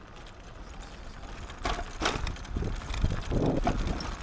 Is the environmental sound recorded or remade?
recorded